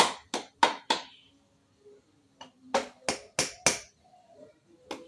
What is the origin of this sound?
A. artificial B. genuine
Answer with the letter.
B